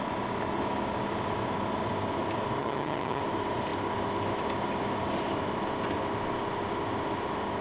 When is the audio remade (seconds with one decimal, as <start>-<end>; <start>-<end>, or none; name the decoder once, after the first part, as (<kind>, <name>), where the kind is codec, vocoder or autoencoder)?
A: 2.6-3.2 (vocoder, HiFi-GAN)